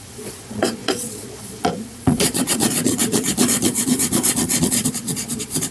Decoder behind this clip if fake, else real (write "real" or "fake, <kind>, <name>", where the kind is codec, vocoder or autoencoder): fake, vocoder, Vocos